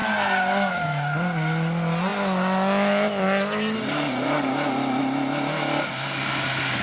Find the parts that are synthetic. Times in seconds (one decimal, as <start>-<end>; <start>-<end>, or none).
none